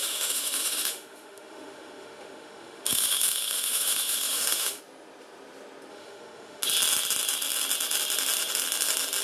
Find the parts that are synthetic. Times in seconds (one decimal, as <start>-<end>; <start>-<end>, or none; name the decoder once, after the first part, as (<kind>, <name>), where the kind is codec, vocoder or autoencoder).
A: 0.0-4.8 (autoencoder, DAC-VAE); 5.9-6.6